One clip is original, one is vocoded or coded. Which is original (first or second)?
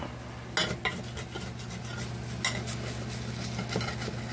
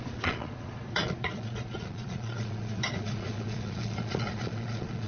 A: first